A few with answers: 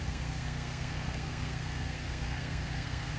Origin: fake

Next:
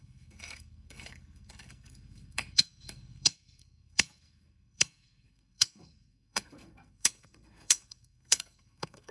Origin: fake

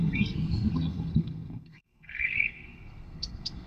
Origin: fake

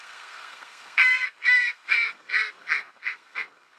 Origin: fake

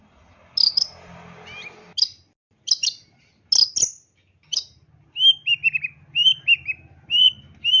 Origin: real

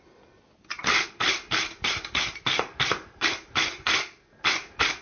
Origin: real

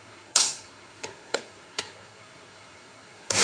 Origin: fake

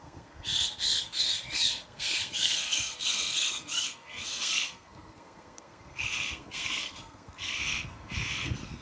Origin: fake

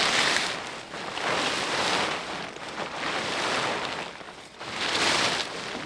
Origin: real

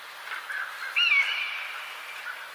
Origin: real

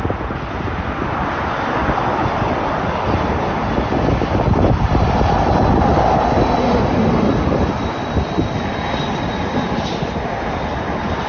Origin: real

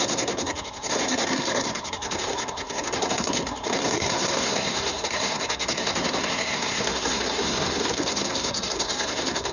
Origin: fake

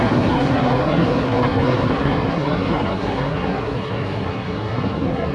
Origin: fake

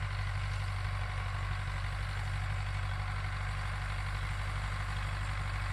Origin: real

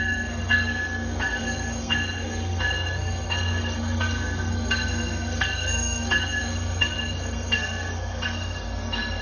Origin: fake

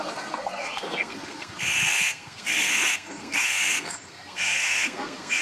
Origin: fake